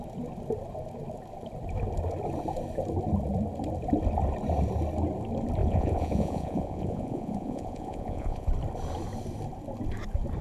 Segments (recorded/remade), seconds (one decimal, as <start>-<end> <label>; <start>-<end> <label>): 0.0-5.6 recorded; 5.6-8.5 remade; 8.5-10.4 recorded